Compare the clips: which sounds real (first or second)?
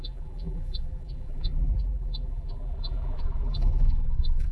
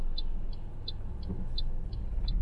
second